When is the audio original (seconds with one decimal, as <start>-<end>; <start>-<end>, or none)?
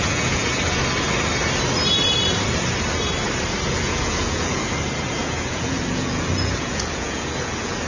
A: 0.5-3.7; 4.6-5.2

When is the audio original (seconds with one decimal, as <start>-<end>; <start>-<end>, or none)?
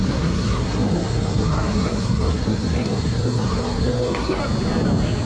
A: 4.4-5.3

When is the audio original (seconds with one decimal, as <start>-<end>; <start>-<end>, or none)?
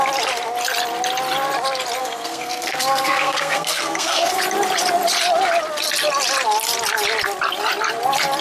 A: 0.0-2.0; 4.4-8.4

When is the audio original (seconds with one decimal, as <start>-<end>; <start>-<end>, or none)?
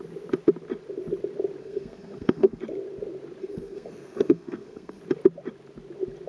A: 0.0-1.6; 2.6-3.4; 5.0-6.3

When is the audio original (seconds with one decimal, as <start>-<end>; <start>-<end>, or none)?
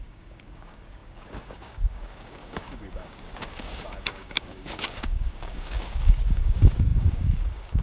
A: none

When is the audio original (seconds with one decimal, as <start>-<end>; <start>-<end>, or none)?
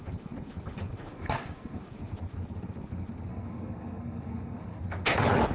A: 0.0-1.1; 1.8-3.3; 4.8-5.5